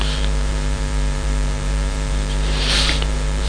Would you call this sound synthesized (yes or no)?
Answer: yes